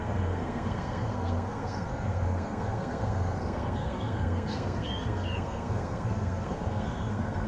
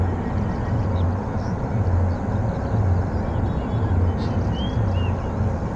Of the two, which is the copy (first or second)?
first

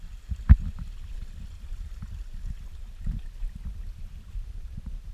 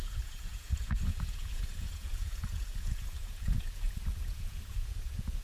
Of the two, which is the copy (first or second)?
second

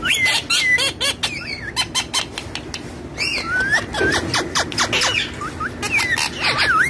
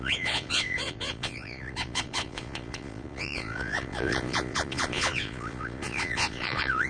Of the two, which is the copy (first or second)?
second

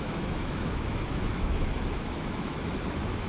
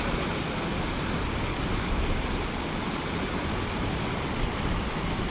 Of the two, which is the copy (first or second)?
first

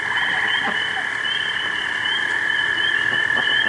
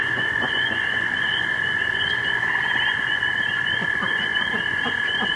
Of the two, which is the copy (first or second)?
second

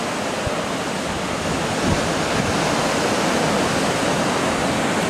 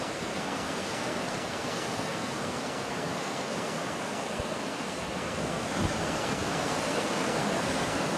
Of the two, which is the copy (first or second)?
second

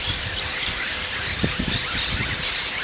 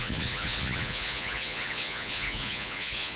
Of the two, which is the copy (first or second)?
second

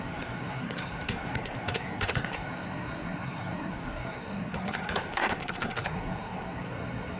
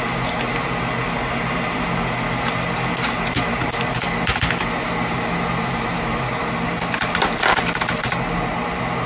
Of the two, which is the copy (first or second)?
first